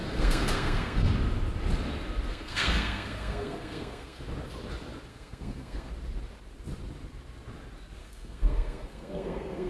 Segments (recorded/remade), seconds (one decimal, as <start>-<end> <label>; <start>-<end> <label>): 0.0-1.1 remade; 1.1-2.3 recorded; 2.3-4.2 remade; 4.2-5.1 recorded; 5.1-5.9 remade; 5.9-8.0 recorded; 8.0-9.7 remade